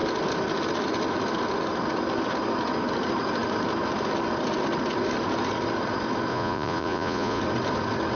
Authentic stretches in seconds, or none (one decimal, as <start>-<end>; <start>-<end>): 0.0-6.3; 7.4-8.1